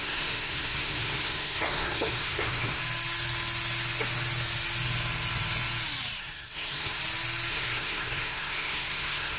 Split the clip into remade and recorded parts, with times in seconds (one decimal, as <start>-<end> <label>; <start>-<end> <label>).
0.0-2.8 remade; 2.8-6.2 recorded; 6.2-7.0 remade; 7.0-7.5 recorded; 7.5-9.4 remade